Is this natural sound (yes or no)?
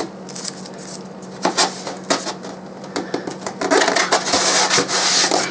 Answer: yes